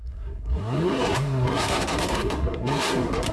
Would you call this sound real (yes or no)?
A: no